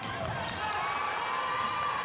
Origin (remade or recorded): recorded